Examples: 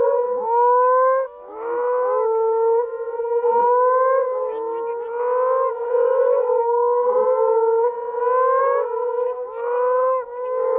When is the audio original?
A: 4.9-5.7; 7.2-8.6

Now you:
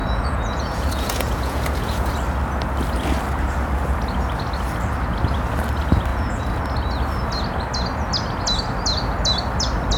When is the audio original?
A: 2.1-6.1; 6.6-10.0

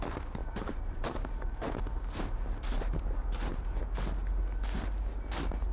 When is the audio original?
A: 0.0-0.4; 3.8-5.7